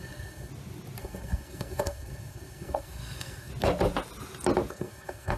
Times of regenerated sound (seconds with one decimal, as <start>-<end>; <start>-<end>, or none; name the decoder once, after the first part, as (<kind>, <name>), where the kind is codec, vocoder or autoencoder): 0.0-0.5 (codec, SNAC); 1.0-3.5; 4.7-5.4